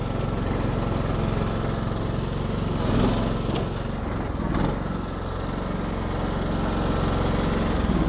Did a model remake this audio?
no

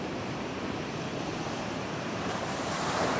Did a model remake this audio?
yes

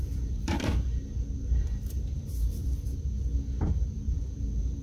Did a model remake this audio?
yes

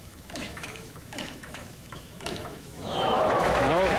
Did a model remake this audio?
yes